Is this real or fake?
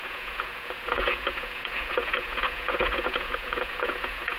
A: fake